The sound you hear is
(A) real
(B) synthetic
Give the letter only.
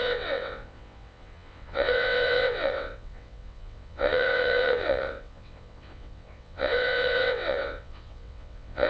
B